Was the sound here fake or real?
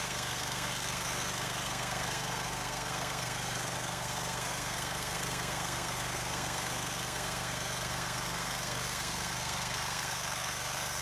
fake